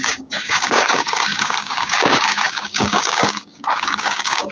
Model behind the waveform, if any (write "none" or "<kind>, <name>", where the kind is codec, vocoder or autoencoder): codec, DAC